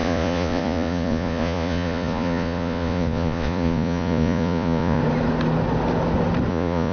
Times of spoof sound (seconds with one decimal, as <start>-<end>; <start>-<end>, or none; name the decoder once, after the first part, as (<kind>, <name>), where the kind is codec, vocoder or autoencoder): 0.0-5.0 (vocoder, Vocos); 6.5-6.9